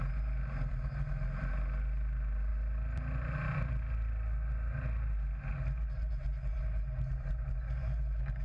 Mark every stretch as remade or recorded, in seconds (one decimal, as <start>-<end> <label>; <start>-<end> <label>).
0.0-8.4 recorded